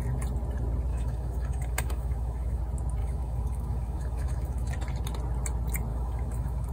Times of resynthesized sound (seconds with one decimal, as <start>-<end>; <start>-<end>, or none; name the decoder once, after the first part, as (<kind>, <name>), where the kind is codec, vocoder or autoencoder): 0.9-2.6 (autoencoder, DAC-VAE); 3.0-4.7; 5.9-6.7